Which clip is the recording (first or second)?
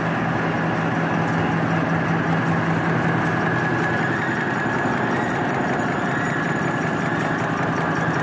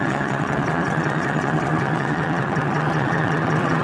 first